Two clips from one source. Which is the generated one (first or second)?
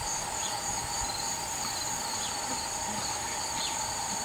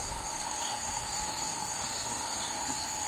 second